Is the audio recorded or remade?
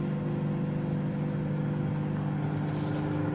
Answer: recorded